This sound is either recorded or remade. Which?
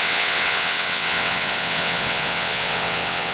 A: remade